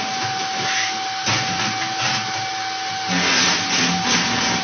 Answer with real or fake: real